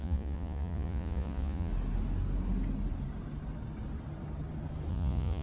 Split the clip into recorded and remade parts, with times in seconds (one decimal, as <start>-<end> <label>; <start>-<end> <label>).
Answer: 0.0-1.7 remade; 1.7-4.9 recorded; 4.9-5.4 remade